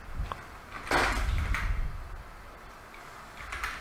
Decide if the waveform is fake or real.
real